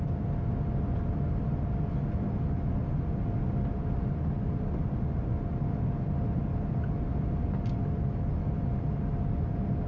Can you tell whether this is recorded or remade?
recorded